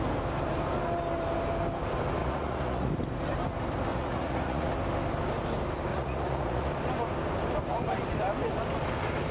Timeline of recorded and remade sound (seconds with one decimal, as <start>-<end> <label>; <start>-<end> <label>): 0.0-2.2 recorded; 2.2-2.9 remade; 2.9-3.9 recorded; 3.9-4.7 remade; 4.7-5.9 recorded; 5.9-6.7 remade; 6.7-9.3 recorded